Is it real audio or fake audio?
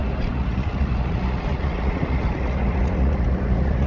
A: fake